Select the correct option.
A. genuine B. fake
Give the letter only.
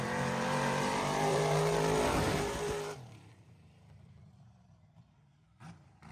B